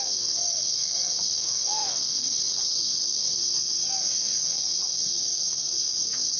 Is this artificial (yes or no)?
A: yes